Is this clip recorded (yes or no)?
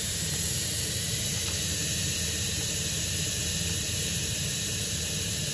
no